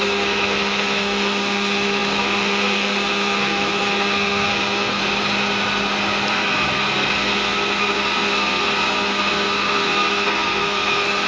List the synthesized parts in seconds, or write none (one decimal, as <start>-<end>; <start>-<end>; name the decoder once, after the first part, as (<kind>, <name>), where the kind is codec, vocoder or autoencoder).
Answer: 0.0-5.0 (codec, SNAC); 6.3-11.3